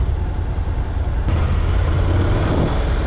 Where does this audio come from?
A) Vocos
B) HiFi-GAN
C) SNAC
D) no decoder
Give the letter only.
D